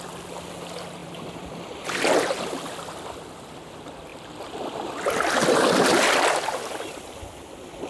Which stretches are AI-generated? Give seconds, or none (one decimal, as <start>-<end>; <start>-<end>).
1.0-2.5